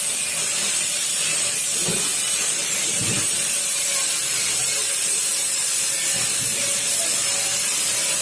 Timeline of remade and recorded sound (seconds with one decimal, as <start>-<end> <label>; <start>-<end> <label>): 0.0-8.2 recorded